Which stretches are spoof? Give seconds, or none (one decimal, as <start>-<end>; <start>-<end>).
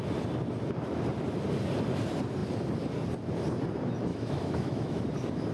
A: 4.1-5.0